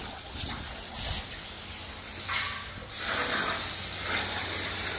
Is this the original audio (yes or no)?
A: yes